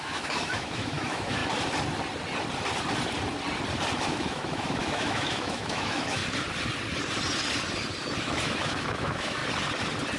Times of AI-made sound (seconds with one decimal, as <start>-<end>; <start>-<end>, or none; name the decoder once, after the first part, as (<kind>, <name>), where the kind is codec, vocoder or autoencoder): 0.0-1.4 (autoencoder, DAC-VAE); 4.0-6.2; 8.2-9.4